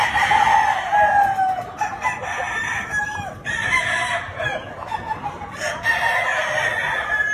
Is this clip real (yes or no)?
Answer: yes